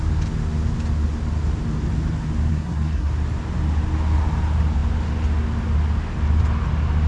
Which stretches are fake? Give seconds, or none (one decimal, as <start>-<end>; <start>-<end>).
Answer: 2.5-3.1